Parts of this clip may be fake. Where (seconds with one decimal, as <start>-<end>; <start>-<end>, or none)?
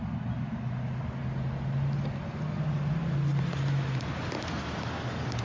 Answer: none